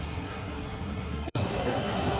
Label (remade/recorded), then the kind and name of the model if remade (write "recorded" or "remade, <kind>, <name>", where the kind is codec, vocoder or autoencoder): remade, codec, SNAC